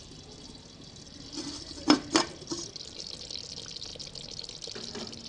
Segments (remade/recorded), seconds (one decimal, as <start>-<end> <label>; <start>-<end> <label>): 0.0-5.3 recorded